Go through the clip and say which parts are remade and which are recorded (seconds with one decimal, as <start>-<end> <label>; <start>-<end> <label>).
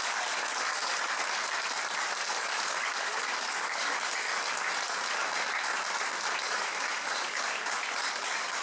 0.0-0.9 remade; 0.9-2.3 recorded; 2.3-4.3 remade; 4.3-6.4 recorded; 6.4-8.6 remade